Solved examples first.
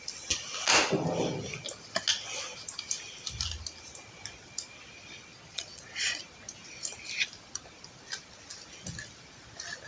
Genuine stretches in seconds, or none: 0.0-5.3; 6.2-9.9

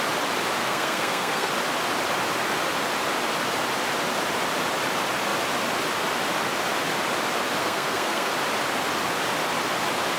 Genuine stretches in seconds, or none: 0.0-0.6; 1.5-7.6; 8.3-10.2

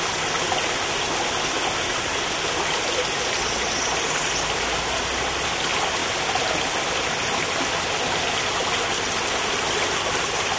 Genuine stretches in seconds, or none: 0.0-10.6

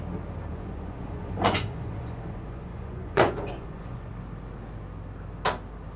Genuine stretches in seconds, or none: 0.0-0.5; 4.1-6.0

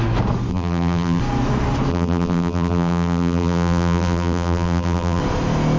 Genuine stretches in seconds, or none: 0.0-0.5; 1.2-1.9; 5.2-5.8

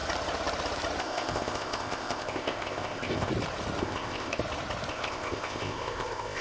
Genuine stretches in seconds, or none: 0.0-1.0; 3.3-3.8; 4.4-4.9